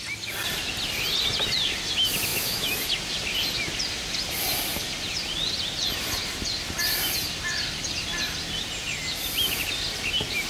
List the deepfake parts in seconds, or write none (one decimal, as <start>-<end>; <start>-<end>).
2.3-2.8

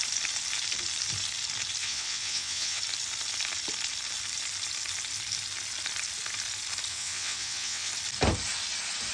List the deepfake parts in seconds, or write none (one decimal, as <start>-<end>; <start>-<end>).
1.8-2.8; 6.9-7.9

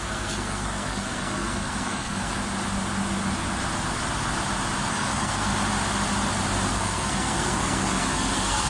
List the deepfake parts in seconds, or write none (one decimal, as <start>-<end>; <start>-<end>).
0.0-2.4; 4.9-5.5; 6.7-8.7

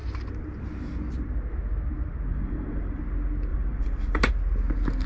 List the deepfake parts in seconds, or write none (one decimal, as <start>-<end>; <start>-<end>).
2.3-3.0; 3.5-4.3

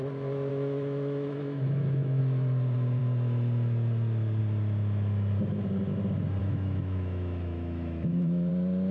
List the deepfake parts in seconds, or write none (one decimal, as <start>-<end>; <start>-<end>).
0.5-2.2; 6.4-8.5

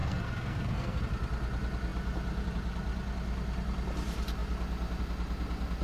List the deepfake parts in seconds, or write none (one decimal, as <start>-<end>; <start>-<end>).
0.0-1.0

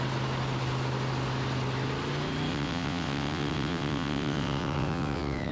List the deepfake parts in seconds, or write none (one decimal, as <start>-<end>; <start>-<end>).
2.5-5.5

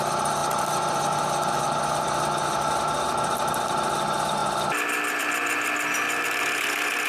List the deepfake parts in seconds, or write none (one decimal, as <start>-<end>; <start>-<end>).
none